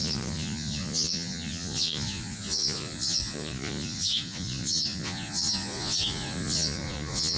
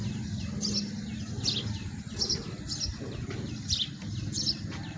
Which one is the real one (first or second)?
second